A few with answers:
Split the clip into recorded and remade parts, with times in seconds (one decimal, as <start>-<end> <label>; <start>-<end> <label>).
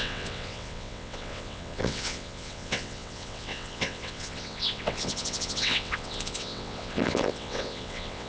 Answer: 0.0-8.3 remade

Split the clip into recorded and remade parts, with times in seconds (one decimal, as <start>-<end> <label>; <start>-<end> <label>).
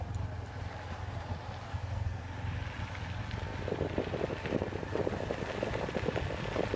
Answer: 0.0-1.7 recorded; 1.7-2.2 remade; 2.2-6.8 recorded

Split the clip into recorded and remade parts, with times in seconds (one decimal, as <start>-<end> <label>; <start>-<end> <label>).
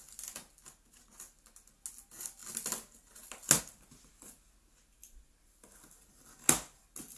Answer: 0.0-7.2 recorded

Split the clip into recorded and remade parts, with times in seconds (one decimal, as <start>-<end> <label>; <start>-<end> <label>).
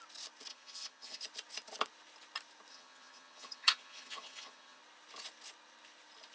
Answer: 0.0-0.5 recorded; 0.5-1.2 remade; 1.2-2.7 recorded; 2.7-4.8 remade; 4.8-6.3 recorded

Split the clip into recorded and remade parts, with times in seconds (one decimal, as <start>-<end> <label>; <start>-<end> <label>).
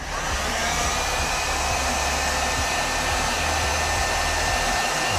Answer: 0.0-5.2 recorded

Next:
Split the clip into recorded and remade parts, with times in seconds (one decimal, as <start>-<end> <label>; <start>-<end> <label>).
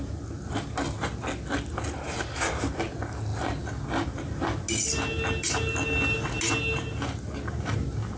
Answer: 0.0-8.2 recorded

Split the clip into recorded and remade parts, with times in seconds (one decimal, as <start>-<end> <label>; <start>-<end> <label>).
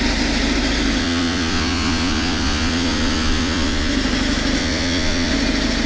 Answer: 0.0-1.0 recorded; 1.0-3.9 remade; 3.9-4.6 recorded; 4.6-5.3 remade; 5.3-5.9 recorded